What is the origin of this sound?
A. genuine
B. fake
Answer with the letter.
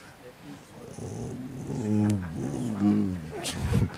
A